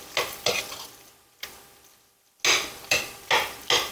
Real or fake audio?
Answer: real